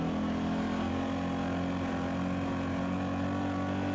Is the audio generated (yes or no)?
no